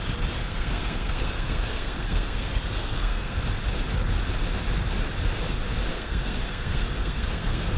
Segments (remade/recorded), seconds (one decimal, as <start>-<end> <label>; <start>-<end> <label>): 0.0-0.4 recorded; 0.4-3.4 remade; 3.4-5.9 recorded; 5.9-7.8 remade